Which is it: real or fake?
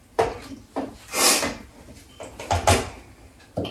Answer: real